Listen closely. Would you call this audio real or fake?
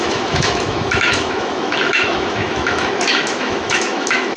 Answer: fake